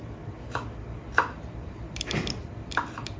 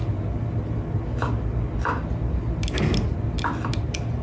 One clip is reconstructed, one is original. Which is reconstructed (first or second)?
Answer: first